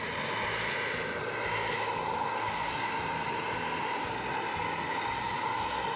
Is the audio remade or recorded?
recorded